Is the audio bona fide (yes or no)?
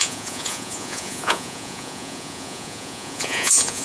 no